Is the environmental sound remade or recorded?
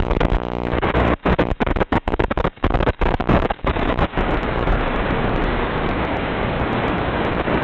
remade